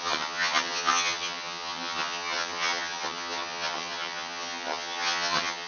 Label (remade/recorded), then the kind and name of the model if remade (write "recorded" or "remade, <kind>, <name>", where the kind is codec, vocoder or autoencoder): remade, vocoder, HiFi-GAN